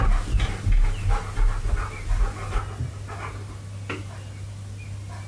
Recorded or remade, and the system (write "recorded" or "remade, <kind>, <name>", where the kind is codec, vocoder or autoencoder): recorded